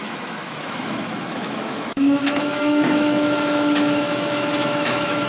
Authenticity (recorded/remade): remade